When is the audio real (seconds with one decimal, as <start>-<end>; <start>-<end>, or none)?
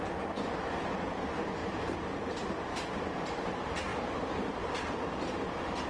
0.0-1.6; 3.0-3.9; 4.7-5.9